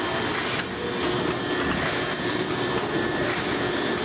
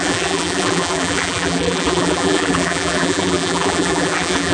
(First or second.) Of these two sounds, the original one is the first